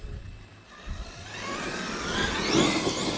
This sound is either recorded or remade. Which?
recorded